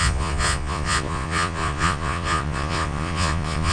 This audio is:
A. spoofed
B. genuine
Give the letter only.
A